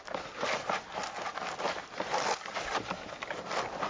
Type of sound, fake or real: real